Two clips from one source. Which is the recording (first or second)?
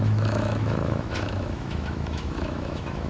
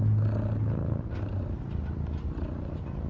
second